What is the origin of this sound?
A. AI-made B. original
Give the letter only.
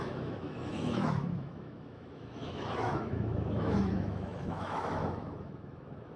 A